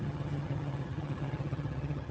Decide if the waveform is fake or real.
fake